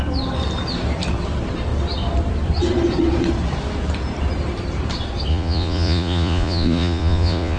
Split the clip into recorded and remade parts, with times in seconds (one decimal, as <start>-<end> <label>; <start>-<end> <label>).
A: 0.0-5.3 recorded; 5.3-7.6 remade